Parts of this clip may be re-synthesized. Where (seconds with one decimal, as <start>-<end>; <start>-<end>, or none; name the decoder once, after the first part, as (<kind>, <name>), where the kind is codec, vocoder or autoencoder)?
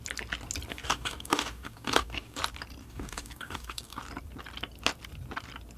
0.7-2.4 (codec, DAC); 2.8-4.0